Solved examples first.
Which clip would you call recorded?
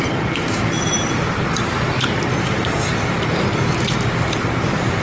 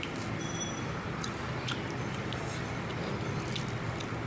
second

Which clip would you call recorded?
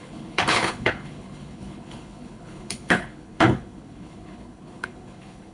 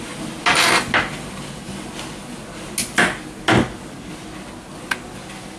second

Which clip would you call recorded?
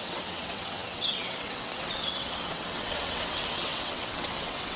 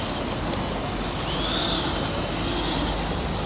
second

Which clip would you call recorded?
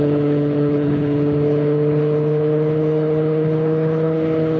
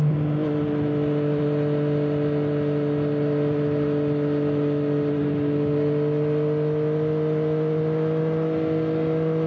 second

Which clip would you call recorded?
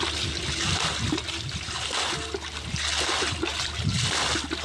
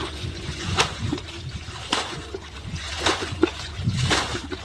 first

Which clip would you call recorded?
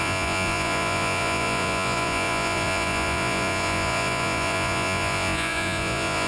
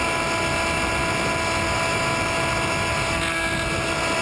second